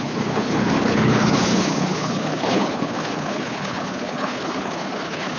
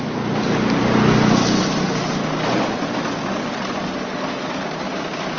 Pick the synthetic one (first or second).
first